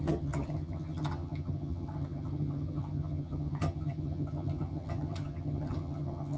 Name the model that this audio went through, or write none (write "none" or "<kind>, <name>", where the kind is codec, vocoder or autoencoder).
vocoder, HiFi-GAN